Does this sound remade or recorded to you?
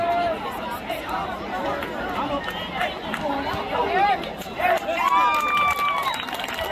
recorded